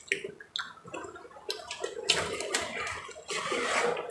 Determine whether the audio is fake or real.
real